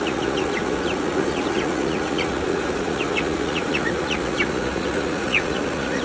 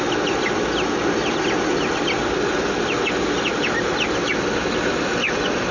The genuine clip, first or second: second